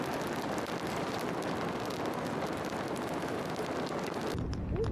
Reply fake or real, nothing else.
real